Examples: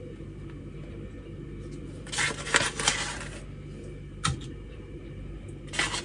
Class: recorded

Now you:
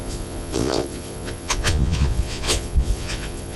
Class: remade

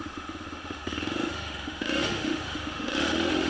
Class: remade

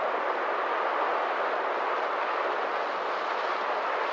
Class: recorded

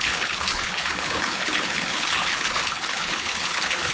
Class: remade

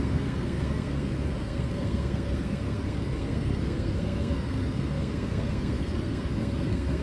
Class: remade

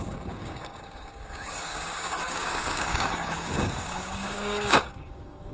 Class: remade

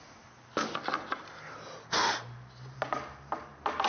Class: recorded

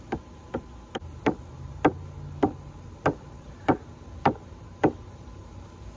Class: recorded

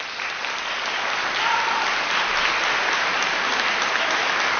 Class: recorded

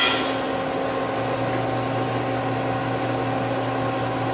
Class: recorded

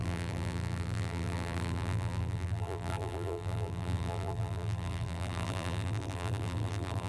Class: remade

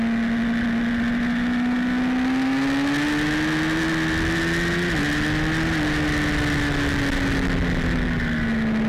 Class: recorded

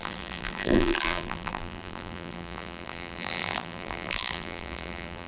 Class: remade